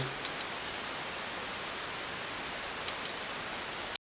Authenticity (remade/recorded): recorded